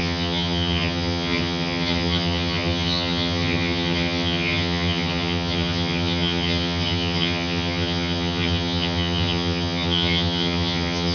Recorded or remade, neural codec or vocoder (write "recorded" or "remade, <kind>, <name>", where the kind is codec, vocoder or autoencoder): remade, vocoder, HiFi-GAN